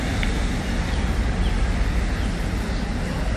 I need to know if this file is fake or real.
real